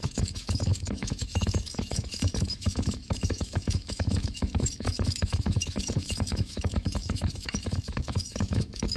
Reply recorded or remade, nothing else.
remade